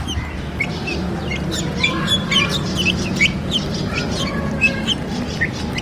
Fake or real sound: real